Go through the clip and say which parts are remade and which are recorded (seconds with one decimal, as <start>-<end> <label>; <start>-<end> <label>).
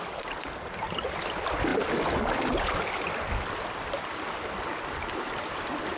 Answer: 0.0-6.0 recorded